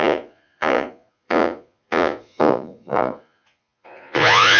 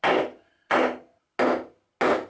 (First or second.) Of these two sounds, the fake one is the first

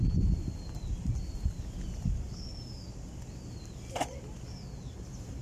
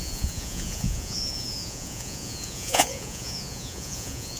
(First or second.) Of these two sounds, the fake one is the second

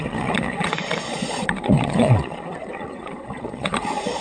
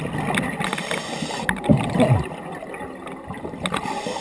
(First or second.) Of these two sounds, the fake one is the first